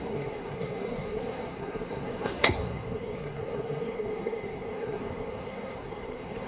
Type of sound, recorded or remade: remade